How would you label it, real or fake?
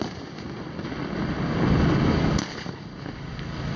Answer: real